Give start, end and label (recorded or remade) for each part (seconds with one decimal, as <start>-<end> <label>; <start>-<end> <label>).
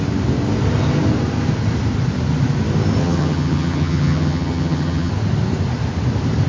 0.0-3.0 recorded; 3.0-5.1 remade; 5.1-6.5 recorded